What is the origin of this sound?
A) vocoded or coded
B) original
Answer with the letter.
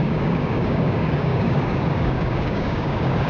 A